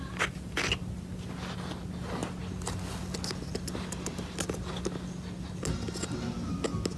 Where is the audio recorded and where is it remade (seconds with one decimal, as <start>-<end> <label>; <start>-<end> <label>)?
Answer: 0.0-7.0 recorded